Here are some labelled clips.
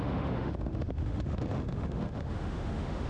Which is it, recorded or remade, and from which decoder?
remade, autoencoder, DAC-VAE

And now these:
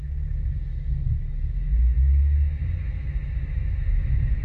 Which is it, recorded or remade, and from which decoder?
remade, autoencoder, DAC-VAE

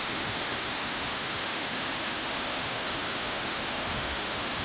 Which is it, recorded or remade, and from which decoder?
remade, autoencoder, DAC-VAE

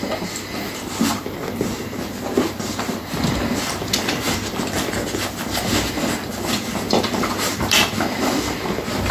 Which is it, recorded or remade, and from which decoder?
recorded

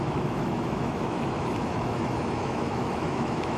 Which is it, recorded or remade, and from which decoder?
remade, autoencoder, DAC-VAE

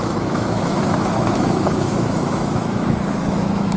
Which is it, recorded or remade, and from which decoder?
remade, autoencoder, DAC-VAE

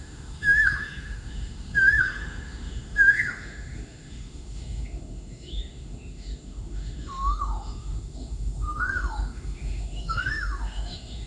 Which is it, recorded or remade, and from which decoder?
remade, autoencoder, DAC-VAE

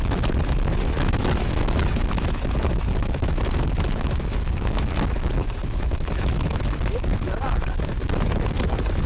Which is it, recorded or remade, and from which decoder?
remade, autoencoder, DAC-VAE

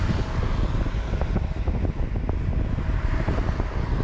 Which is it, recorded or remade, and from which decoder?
recorded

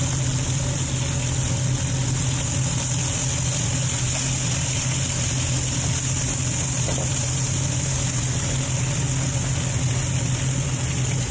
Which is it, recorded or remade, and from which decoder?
recorded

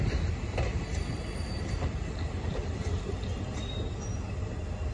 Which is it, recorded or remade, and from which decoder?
recorded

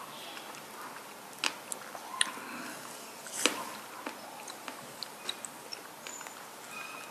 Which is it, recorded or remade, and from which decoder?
recorded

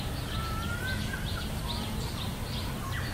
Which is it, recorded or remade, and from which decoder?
recorded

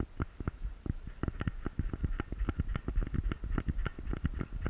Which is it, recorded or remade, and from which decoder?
recorded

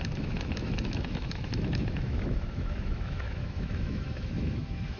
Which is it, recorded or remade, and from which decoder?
remade, autoencoder, DAC-VAE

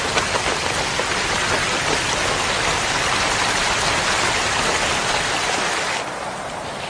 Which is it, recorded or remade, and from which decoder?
recorded